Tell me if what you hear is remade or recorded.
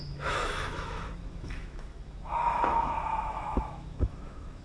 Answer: remade